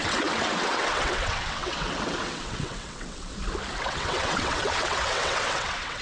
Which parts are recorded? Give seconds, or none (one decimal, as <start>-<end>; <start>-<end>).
3.3-3.8